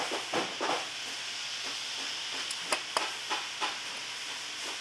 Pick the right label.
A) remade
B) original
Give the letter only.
B